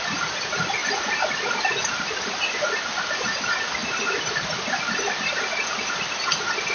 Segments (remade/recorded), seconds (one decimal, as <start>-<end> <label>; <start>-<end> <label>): 0.0-6.7 recorded